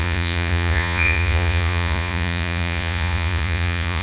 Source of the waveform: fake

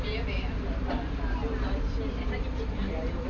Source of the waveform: real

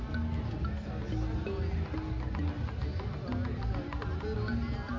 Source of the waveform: real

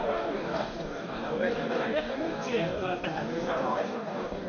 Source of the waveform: fake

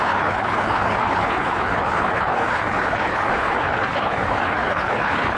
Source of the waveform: fake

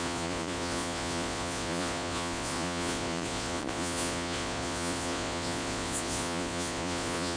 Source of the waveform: fake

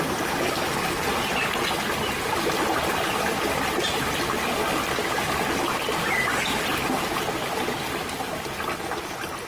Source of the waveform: real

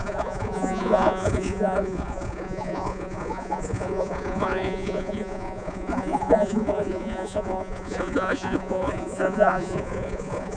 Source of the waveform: fake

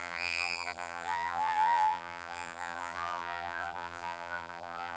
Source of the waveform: fake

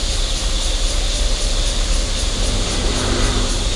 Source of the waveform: real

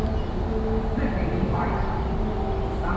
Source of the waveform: real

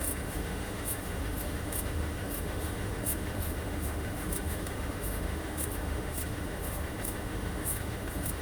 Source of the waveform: fake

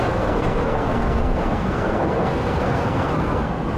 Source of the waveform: fake